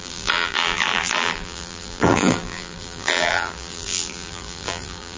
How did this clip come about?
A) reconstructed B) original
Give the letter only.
A